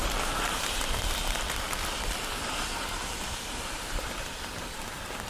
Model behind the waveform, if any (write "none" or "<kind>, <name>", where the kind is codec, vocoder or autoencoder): vocoder, BigVGAN v2